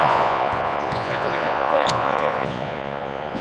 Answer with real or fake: fake